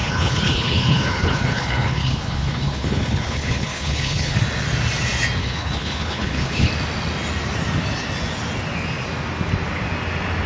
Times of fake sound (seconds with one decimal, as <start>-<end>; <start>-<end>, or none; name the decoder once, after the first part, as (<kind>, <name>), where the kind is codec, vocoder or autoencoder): 0.0-4.4 (codec, HILCodec); 5.4-6.7

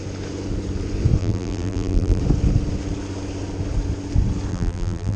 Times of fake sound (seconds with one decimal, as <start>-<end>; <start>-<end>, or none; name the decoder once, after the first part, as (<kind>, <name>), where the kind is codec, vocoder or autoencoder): 1.2-2.2 (vocoder, BigVGAN v2); 4.5-5.2